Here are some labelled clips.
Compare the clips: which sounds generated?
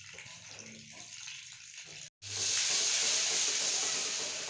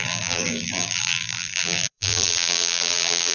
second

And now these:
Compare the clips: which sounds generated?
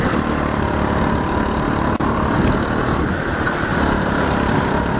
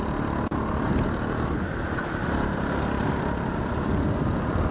first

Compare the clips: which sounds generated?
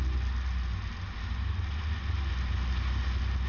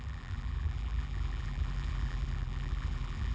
second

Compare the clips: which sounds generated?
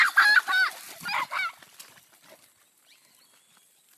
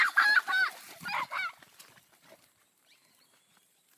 second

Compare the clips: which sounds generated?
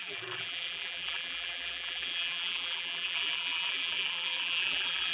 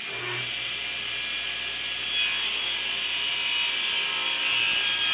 first